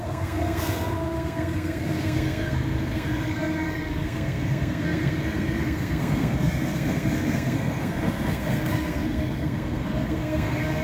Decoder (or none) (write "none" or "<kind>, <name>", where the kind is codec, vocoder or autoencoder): codec, SNAC